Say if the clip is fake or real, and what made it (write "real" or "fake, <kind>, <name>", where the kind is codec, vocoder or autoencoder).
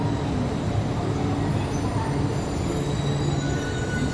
real